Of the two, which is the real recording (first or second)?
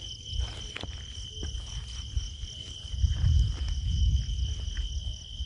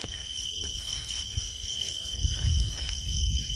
first